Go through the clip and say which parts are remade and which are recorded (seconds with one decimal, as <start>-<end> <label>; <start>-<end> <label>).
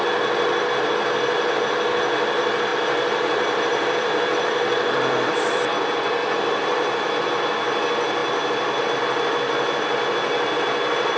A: 0.0-2.7 recorded; 2.7-7.1 remade; 7.1-11.2 recorded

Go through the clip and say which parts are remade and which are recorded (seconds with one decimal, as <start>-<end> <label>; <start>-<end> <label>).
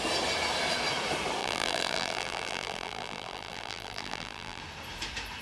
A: 0.0-1.4 recorded; 1.4-4.6 remade; 4.6-5.4 recorded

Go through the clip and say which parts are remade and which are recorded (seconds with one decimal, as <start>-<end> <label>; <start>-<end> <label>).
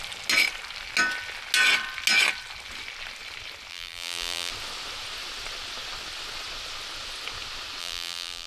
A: 0.0-3.7 recorded; 3.7-4.5 remade; 4.5-7.8 recorded; 7.8-8.5 remade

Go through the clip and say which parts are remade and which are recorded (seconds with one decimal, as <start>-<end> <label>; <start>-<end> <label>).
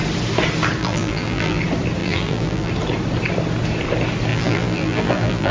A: 0.0-0.8 recorded; 0.8-1.6 remade; 1.6-2.0 recorded; 2.0-2.7 remade; 2.7-4.3 recorded; 4.3-5.5 remade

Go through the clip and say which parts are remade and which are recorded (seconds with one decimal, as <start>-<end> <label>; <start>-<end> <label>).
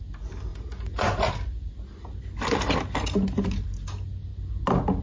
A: 0.0-5.0 recorded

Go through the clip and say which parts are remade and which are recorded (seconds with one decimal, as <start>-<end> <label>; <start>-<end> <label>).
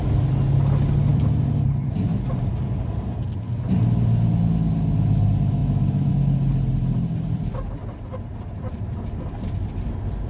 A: 0.0-1.1 recorded; 1.1-3.0 remade; 3.0-10.3 recorded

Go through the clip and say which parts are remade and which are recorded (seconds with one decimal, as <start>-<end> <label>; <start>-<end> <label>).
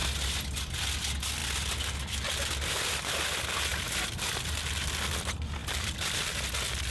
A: 0.0-5.6 recorded; 5.6-6.2 remade; 6.2-6.9 recorded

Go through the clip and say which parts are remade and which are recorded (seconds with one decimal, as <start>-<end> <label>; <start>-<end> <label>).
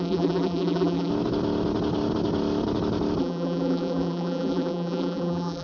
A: 0.0-1.1 remade; 1.1-3.2 recorded; 3.2-5.6 remade